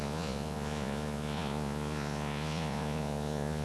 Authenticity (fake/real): fake